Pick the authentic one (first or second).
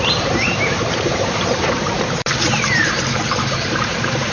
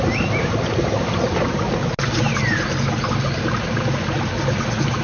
second